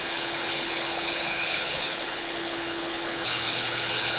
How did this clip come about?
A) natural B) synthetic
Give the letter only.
B